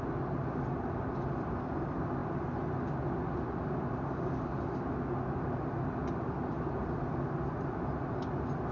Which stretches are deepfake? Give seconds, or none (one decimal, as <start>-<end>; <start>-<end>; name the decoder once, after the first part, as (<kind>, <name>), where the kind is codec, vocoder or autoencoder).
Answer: none